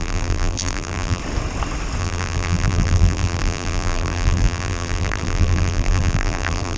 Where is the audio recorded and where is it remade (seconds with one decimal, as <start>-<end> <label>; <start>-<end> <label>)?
0.0-1.2 remade; 1.2-2.0 recorded; 2.0-6.8 remade